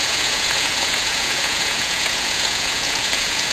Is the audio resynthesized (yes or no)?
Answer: yes